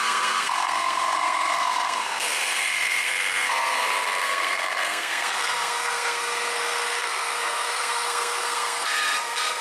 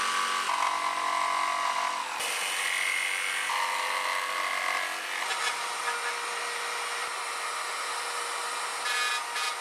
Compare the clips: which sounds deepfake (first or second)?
first